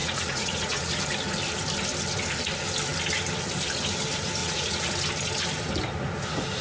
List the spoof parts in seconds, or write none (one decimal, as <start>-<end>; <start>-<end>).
0.0-0.9; 4.4-4.9